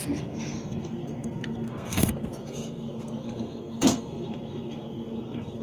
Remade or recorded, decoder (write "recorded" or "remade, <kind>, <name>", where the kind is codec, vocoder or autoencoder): remade, codec, SNAC